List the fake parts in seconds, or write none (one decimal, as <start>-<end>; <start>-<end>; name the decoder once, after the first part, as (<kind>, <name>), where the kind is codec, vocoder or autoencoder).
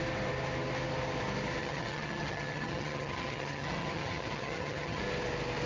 1.6-5.0 (vocoder, HiFi-GAN)